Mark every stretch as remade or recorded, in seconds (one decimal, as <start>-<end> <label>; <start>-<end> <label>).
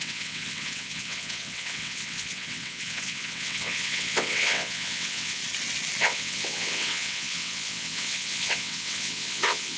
0.0-5.4 remade; 5.4-6.0 recorded; 6.0-9.8 remade